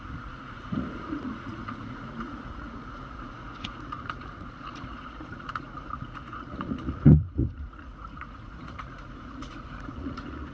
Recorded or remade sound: remade